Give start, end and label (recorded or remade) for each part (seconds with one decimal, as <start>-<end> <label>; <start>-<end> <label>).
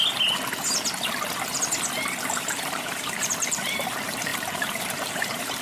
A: 0.0-2.2 recorded; 2.2-5.6 remade